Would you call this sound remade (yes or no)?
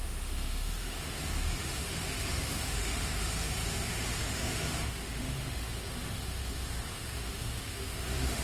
yes